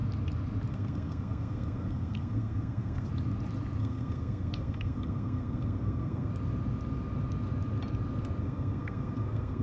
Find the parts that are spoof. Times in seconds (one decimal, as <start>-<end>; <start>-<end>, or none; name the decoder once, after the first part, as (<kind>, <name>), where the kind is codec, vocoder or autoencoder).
0.7-3.1 (codec, SNAC); 3.8-6.3; 8.4-9.6